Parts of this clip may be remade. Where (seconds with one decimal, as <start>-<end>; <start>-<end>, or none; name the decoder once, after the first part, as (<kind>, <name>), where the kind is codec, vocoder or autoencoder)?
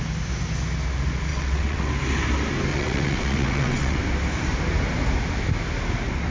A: 1.3-1.9 (vocoder, WaveNeXt); 2.7-4.0